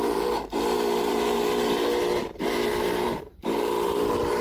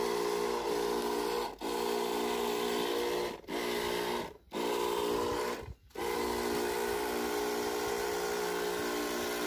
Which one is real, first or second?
second